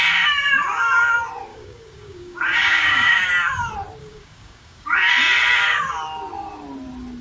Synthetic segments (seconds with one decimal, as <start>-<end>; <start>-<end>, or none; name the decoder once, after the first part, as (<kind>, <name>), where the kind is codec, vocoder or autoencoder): 1.5-3.3 (codec, DAC); 4.0-5.1